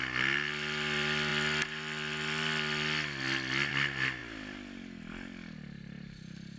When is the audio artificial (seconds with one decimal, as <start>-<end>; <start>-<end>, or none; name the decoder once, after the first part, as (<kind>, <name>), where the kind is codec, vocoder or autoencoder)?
none